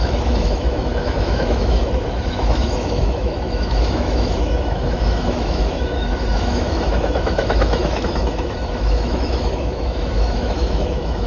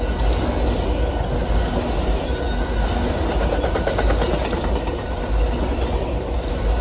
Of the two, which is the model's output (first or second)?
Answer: first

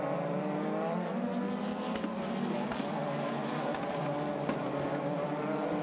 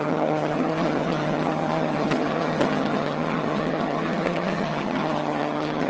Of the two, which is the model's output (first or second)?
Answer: second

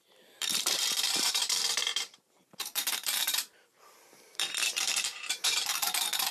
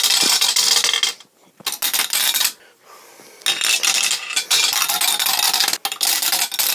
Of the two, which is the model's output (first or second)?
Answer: first